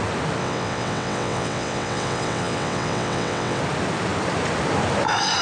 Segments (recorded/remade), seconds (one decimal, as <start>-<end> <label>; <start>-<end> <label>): 0.0-0.4 recorded; 0.4-3.6 remade; 3.6-5.4 recorded